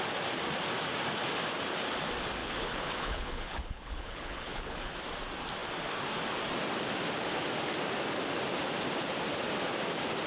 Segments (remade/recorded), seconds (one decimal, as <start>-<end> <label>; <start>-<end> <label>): 0.0-2.4 recorded; 2.4-4.9 remade; 4.9-10.3 recorded